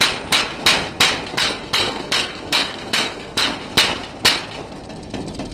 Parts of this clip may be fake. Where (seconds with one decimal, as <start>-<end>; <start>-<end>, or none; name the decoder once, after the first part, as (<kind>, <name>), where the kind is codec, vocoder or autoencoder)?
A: 1.3-3.4 (codec, SNAC)